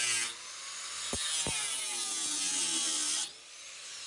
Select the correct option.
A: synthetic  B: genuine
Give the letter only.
B